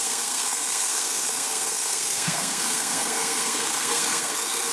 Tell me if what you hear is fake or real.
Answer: fake